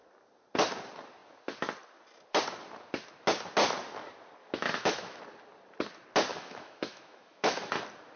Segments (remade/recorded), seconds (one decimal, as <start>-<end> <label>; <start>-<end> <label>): 0.0-4.4 recorded; 4.4-5.2 remade; 5.2-6.3 recorded; 6.3-7.7 remade; 7.7-8.2 recorded